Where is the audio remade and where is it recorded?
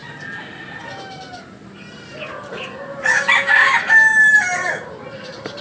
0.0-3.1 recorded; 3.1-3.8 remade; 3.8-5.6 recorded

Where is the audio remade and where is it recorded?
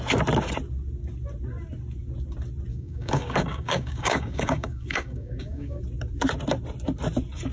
0.0-2.7 recorded; 2.7-5.8 remade; 5.8-7.5 recorded